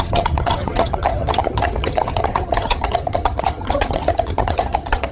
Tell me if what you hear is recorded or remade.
remade